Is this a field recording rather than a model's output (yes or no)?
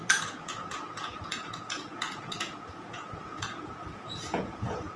no